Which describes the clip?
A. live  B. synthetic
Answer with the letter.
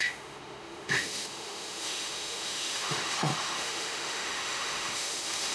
B